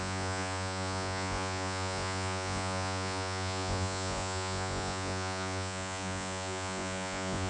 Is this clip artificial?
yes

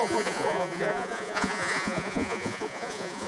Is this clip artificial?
yes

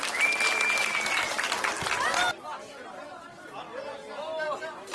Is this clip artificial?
no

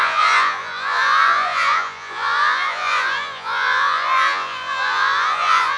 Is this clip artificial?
yes